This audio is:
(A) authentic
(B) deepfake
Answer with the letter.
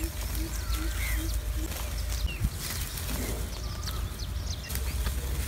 A